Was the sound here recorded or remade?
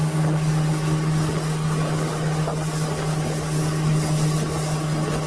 recorded